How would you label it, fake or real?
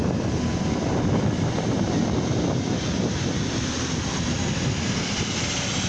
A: real